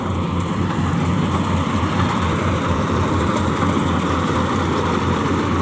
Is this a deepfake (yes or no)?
yes